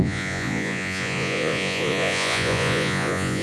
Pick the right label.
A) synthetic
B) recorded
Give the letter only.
A